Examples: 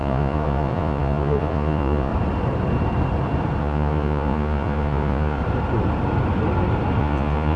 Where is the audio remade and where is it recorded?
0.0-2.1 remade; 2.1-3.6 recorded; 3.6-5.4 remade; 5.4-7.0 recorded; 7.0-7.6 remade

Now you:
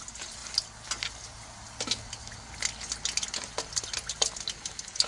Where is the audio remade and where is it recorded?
0.0-5.1 recorded